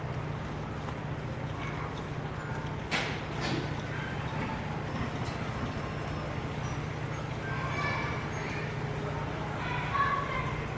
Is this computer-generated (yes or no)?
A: no